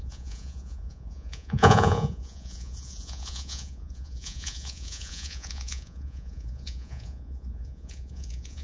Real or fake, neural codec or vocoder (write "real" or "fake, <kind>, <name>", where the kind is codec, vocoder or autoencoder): fake, vocoder, Vocos